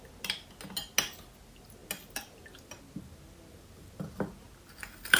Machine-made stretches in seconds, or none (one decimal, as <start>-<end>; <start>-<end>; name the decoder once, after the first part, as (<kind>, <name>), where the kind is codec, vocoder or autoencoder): none